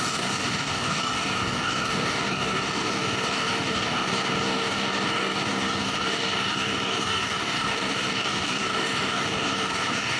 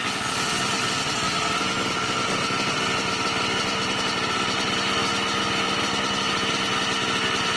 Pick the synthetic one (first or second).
first